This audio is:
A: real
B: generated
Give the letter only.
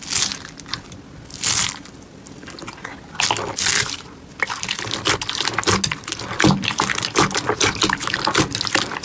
A